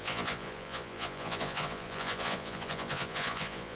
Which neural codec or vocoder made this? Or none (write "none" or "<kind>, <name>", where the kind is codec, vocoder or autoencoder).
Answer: vocoder, Vocos